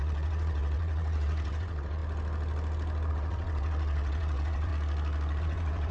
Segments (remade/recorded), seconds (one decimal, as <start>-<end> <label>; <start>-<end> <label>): 0.0-2.0 remade; 2.0-3.1 recorded; 3.1-4.7 remade; 4.7-5.4 recorded; 5.4-5.9 remade